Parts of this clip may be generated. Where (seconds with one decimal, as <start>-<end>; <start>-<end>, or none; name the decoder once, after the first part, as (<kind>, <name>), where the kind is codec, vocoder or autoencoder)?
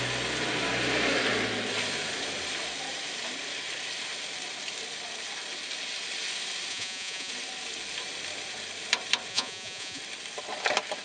6.7-7.3 (vocoder, Vocos); 9.3-10.0